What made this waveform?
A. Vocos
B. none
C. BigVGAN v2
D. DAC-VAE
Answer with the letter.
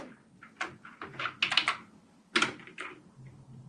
B